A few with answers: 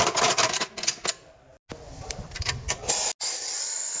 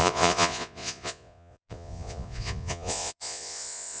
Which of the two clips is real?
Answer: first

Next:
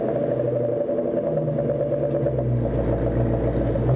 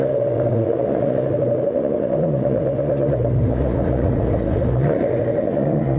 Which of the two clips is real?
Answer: first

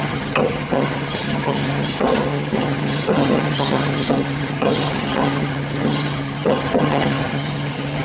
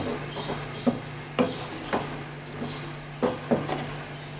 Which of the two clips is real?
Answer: second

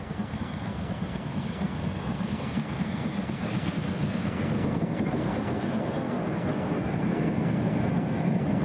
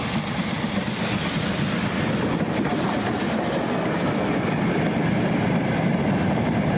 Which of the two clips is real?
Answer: second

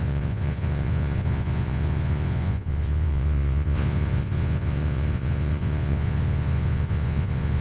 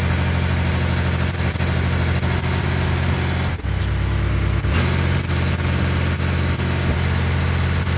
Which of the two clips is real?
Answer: second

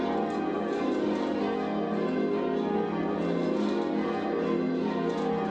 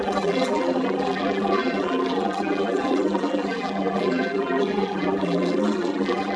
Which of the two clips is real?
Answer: first